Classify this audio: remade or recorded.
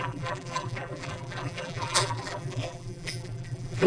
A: remade